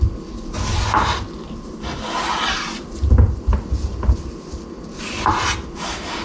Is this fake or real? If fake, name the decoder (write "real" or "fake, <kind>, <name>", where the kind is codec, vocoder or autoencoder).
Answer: real